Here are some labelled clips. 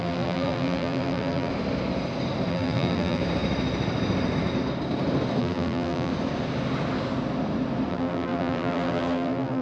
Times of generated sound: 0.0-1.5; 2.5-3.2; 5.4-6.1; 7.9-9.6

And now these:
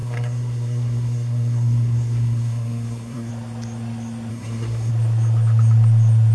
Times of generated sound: 0.0-3.3; 4.3-4.9

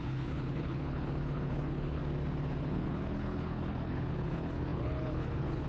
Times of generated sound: 0.0-2.0; 2.6-5.7